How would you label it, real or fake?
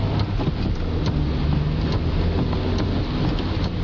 real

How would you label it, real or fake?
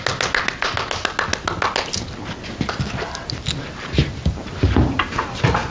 real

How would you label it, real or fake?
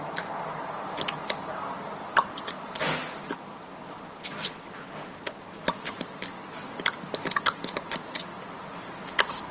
real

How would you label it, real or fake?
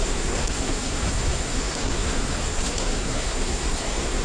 fake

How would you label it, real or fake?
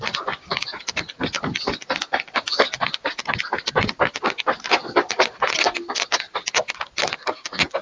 real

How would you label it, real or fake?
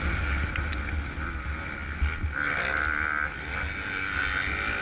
real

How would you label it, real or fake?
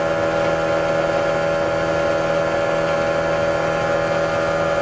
real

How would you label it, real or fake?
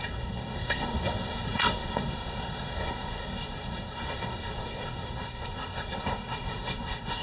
fake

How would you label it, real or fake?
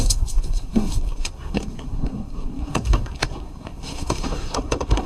fake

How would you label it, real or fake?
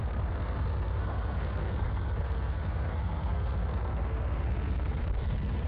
fake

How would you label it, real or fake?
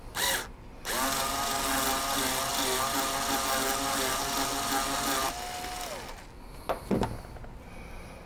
real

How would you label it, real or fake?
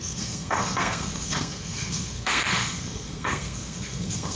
fake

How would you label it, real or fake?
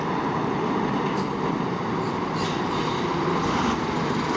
real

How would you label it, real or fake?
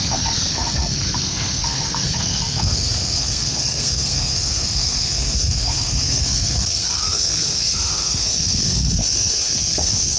fake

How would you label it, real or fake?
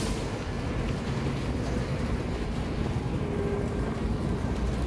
real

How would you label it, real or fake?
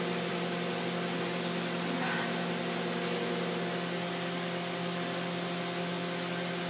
real